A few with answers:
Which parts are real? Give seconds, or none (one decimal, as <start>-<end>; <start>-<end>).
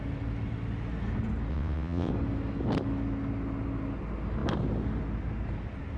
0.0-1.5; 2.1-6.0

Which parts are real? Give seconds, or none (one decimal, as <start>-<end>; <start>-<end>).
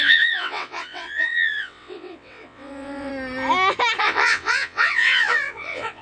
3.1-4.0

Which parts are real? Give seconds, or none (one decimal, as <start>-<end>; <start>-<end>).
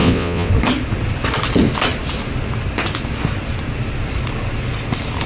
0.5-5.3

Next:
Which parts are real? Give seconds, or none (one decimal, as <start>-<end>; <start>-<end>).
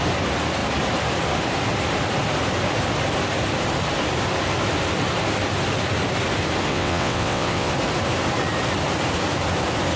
0.0-6.7; 7.7-10.0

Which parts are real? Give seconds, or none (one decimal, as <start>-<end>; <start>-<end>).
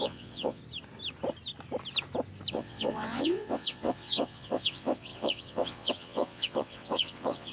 0.6-2.5